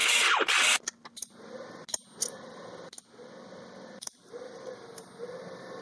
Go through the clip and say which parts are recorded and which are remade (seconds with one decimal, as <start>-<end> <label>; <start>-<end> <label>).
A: 0.0-5.8 recorded